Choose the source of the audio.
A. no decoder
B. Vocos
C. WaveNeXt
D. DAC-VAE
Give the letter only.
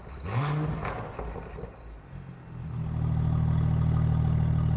A